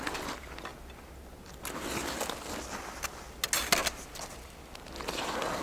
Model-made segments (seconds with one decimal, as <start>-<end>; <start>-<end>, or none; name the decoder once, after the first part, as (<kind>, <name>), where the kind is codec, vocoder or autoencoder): none